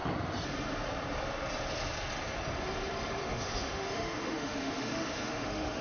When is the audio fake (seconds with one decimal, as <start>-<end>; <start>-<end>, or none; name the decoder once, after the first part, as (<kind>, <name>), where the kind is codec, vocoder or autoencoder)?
3.2-5.8 (autoencoder, DAC-VAE)